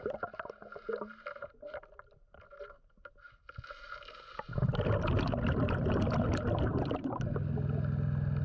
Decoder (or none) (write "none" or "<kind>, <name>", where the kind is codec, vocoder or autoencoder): none